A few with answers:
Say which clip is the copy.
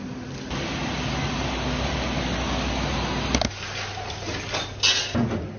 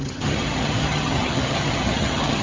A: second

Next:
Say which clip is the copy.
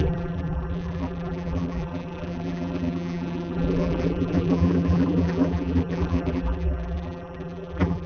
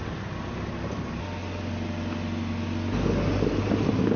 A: first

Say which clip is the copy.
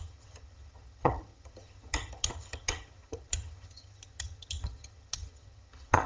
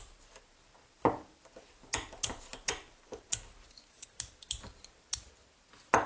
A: first